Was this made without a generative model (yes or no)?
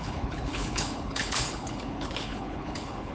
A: no